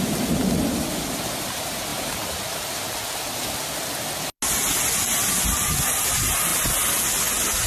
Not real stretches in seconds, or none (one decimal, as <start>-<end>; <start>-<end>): none